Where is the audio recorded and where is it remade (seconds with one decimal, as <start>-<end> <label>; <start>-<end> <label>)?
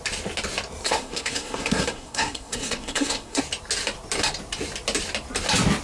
0.0-0.8 recorded; 0.8-3.4 remade; 3.4-5.8 recorded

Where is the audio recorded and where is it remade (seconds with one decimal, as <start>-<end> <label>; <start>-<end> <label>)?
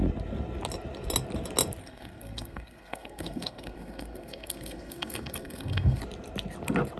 0.0-1.8 recorded; 1.8-6.0 remade; 6.0-7.0 recorded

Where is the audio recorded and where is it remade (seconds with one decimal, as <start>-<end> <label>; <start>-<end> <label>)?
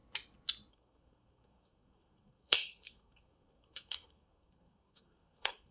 0.0-0.7 recorded; 0.7-5.7 remade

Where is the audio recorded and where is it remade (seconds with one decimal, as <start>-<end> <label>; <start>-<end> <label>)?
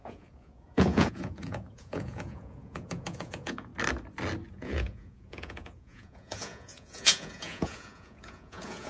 0.0-3.7 remade; 3.7-4.5 recorded; 4.5-8.9 remade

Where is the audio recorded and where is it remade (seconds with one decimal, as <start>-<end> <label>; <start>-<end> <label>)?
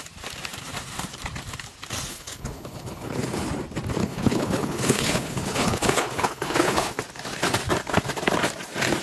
0.0-2.1 recorded; 2.1-3.2 remade; 3.2-4.0 recorded; 4.0-7.0 remade; 7.0-9.0 recorded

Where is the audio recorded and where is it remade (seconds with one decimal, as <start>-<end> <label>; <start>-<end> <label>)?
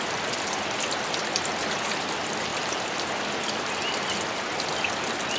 0.0-2.5 recorded; 2.5-3.2 remade; 3.2-5.4 recorded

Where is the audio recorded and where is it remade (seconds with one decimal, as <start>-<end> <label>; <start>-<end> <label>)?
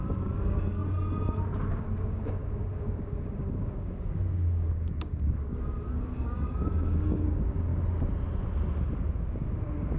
0.0-0.8 remade; 0.8-1.7 recorded; 1.7-7.7 remade; 7.7-9.3 recorded; 9.3-10.0 remade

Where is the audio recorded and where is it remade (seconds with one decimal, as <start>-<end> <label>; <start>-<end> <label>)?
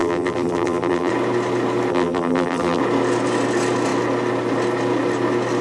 0.0-1.1 remade; 1.1-1.9 recorded; 1.9-2.8 remade; 2.8-5.6 recorded